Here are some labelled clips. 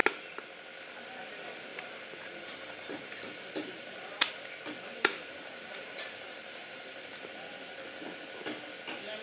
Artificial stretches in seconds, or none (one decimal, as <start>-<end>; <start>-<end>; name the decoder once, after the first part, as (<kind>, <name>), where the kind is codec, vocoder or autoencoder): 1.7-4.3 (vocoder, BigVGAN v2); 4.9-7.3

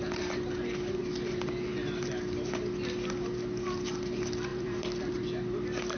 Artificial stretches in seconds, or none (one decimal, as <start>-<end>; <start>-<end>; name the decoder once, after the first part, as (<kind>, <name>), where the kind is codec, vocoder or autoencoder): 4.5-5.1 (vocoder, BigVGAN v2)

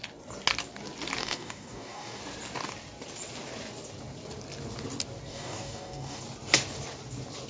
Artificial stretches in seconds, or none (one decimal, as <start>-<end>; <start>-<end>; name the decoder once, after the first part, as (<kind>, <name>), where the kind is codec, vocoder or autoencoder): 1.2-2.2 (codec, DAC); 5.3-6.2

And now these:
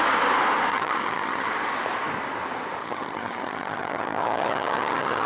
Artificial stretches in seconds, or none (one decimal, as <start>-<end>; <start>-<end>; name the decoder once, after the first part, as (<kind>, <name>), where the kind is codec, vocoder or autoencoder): 0.7-1.5 (vocoder, HiFi-GAN); 2.8-5.3

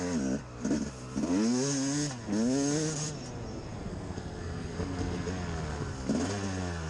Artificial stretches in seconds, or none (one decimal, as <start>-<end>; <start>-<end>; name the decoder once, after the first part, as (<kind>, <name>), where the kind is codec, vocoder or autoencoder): 3.9-5.3 (codec, SNAC)

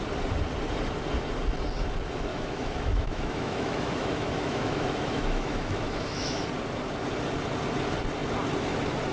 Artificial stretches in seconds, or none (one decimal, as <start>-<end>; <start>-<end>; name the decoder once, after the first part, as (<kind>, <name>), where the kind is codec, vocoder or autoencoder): 2.3-6.4 (autoencoder, DAC-VAE)